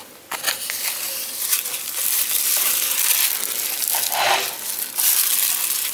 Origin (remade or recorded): recorded